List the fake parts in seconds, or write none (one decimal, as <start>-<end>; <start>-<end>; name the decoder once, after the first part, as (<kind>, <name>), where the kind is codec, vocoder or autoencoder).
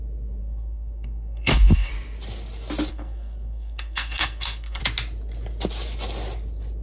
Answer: 0.4-1.9 (codec, SNAC); 2.9-4.8